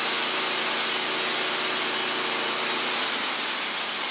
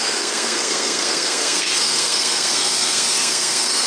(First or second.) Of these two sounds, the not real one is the second